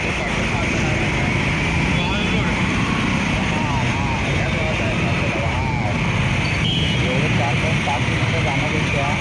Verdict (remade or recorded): recorded